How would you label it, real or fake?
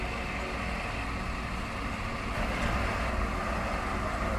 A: real